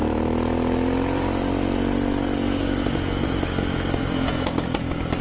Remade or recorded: recorded